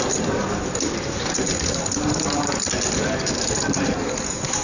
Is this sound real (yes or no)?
yes